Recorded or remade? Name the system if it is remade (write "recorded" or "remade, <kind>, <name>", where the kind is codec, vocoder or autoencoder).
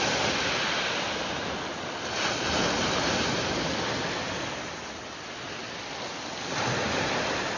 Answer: recorded